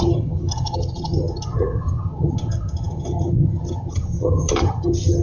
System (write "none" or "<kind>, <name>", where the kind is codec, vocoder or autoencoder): vocoder, HiFi-GAN